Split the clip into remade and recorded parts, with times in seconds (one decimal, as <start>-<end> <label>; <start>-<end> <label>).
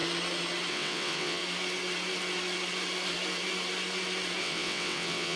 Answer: 0.0-0.7 recorded; 0.7-1.4 remade; 1.4-4.4 recorded; 4.4-5.4 remade